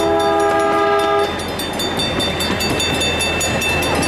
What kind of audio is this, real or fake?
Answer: real